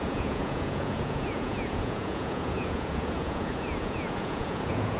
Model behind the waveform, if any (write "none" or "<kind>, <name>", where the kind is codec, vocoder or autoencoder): vocoder, Vocos